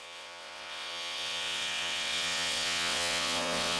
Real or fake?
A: fake